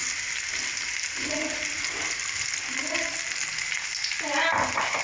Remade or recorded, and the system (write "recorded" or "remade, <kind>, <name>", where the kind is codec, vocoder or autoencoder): recorded